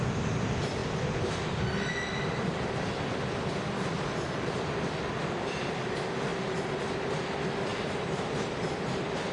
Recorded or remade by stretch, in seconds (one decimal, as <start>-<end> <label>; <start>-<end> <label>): 0.0-7.7 recorded; 7.7-8.5 remade; 8.5-9.3 recorded